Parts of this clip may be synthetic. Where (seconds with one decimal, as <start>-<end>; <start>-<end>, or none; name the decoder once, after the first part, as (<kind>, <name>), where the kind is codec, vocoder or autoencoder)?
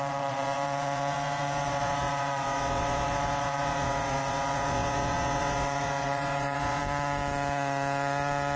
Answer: 0.0-6.8 (vocoder, WaveNeXt)